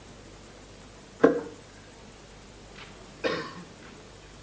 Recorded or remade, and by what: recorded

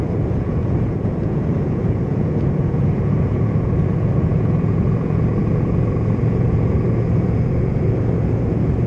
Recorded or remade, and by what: remade, vocoder, Vocos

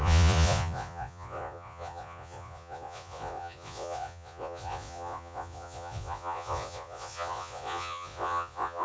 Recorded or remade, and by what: remade, vocoder, Vocos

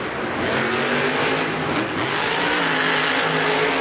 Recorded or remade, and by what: recorded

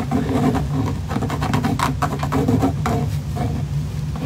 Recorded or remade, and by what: recorded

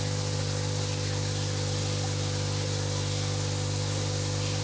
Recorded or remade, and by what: recorded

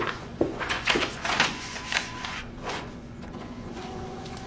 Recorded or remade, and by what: remade, vocoder, Vocos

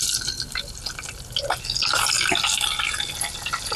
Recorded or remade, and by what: recorded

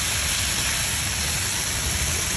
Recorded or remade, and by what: recorded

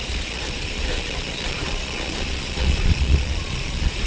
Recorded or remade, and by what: remade, vocoder, Vocos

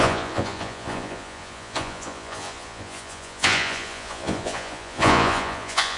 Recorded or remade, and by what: remade, vocoder, Vocos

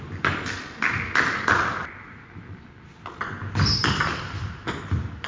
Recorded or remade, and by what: recorded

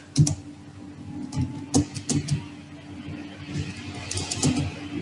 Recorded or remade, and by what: recorded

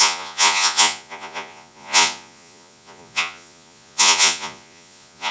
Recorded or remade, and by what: remade, vocoder, Vocos